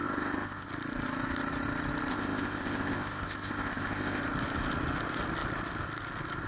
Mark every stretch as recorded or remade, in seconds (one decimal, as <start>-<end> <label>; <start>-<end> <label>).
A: 0.0-0.7 remade; 0.7-2.1 recorded; 2.1-4.2 remade; 4.2-6.5 recorded